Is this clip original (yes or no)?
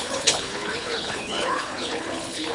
no